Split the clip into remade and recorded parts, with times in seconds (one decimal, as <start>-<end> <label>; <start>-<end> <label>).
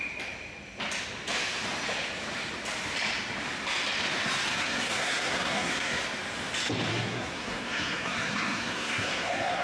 0.0-4.5 recorded; 4.5-6.0 remade; 6.0-6.9 recorded; 6.9-9.6 remade